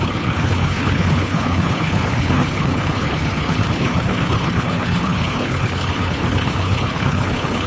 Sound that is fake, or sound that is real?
fake